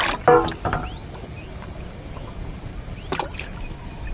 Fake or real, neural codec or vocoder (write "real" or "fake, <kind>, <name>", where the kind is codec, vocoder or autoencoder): real